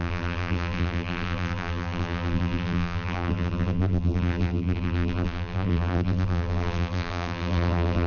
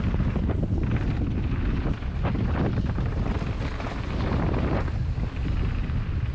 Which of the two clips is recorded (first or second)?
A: second